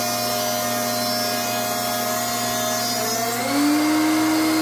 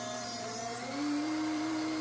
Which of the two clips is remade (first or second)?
second